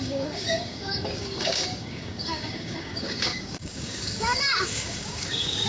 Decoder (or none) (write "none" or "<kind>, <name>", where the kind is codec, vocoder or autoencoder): codec, DAC